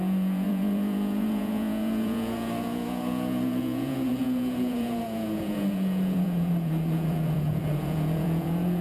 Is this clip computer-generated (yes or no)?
yes